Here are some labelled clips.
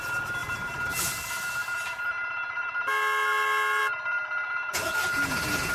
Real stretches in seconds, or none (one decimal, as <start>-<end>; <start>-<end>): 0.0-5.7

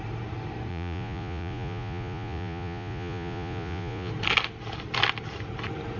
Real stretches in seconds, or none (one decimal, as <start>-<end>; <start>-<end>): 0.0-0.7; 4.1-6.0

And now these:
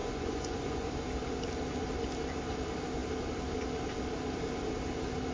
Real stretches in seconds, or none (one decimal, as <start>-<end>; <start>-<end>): 0.9-5.3

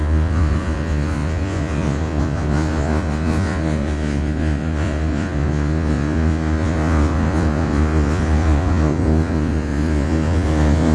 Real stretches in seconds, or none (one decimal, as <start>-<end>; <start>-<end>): none

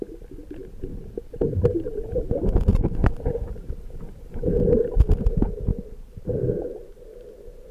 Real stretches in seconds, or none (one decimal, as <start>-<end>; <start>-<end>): 0.0-0.6; 1.1-1.7; 2.3-2.7; 5.1-7.7